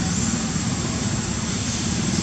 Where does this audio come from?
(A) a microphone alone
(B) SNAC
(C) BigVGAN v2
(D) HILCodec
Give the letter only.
A